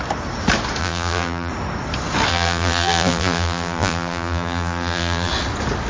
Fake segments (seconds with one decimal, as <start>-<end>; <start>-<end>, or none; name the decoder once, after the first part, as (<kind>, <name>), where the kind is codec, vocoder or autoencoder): 0.8-1.5 (vocoder, BigVGAN v2); 2.3-5.3